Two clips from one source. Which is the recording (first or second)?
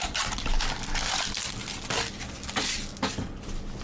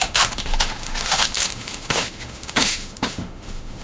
first